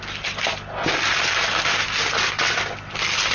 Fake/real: real